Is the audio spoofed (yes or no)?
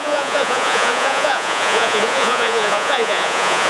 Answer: yes